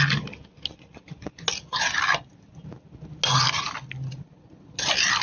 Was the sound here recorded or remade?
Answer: recorded